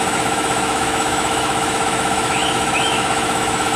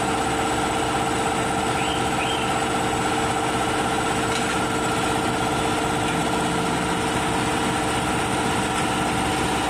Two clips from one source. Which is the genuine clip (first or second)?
second